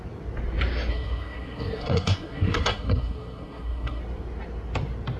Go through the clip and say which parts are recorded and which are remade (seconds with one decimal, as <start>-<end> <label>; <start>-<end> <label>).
0.0-0.9 recorded; 0.9-4.0 remade; 4.0-5.2 recorded